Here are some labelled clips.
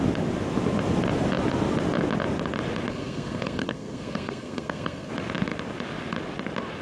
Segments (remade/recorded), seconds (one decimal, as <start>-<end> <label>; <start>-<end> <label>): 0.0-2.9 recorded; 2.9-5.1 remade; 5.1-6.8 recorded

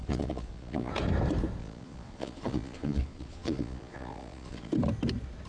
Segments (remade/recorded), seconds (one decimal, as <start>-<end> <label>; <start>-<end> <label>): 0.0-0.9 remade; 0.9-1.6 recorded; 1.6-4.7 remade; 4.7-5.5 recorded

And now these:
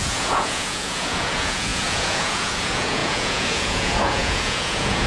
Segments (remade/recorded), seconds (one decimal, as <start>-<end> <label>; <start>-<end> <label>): 0.0-5.1 remade